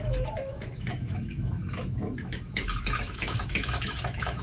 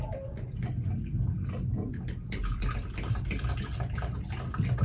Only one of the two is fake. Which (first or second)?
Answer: first